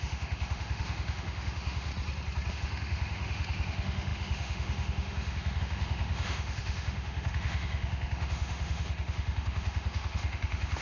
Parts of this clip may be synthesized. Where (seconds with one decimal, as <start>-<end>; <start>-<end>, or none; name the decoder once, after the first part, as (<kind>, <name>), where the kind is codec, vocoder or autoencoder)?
0.0-1.9 (autoencoder, DAC-VAE); 2.5-10.8